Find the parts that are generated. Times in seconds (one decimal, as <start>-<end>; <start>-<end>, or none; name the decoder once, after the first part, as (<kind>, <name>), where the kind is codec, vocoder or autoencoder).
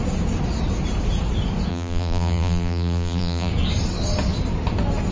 1.7-3.5 (vocoder, BigVGAN v2)